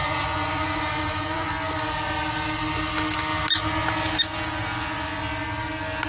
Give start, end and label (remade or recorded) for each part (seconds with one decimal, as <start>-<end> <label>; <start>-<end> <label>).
0.0-1.5 remade; 1.5-6.1 recorded